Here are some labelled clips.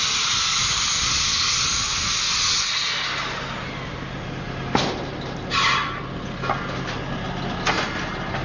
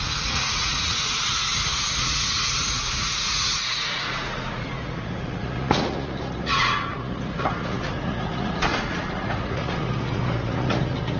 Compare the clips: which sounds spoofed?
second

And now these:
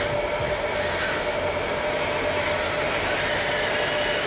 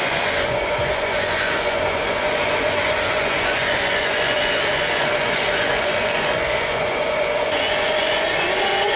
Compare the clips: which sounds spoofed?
second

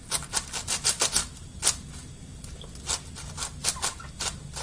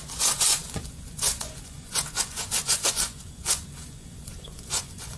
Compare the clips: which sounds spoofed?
second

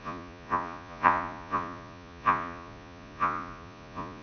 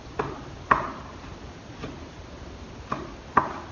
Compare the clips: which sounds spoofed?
first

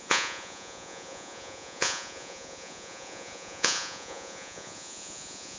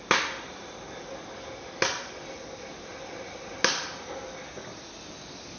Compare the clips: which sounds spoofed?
first